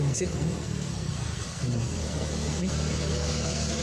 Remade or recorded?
remade